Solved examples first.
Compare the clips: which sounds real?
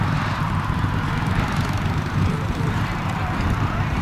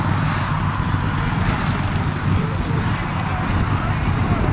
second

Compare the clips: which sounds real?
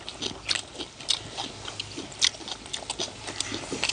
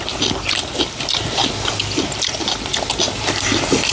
first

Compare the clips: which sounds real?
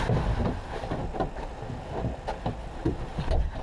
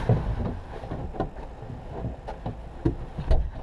second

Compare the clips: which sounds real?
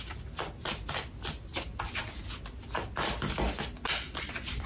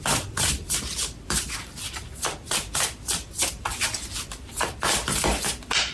first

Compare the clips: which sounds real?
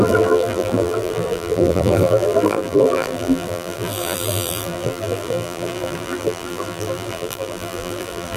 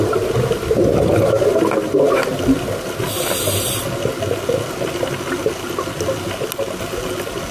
second